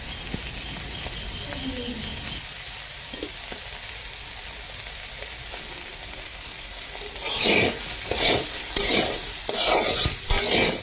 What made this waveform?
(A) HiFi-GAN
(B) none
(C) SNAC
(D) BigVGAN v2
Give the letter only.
B